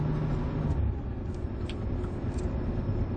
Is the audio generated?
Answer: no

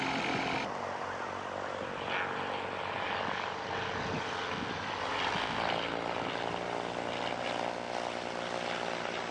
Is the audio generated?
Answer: no